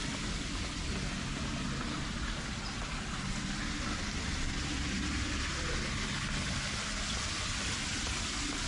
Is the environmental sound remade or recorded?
recorded